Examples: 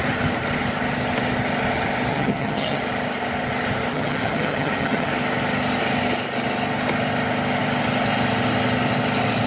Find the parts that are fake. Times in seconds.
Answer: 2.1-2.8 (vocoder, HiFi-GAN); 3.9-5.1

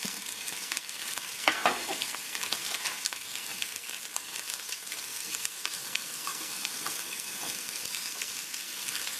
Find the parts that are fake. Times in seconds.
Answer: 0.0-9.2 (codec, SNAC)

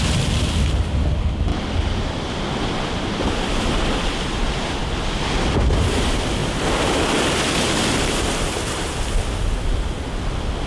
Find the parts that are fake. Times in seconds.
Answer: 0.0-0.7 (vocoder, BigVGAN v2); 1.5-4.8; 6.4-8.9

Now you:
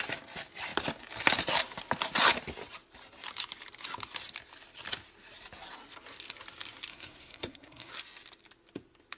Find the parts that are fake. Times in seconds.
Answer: 6.9-7.9 (codec, SNAC)

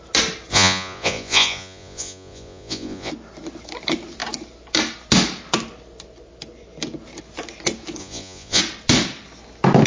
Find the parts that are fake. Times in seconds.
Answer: 0.5-3.1 (vocoder, Vocos); 8.0-8.6

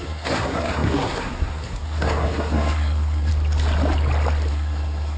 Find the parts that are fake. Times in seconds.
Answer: 0.0-3.3 (codec, SNAC); 4.5-5.2